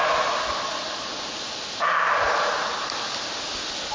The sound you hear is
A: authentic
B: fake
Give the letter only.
A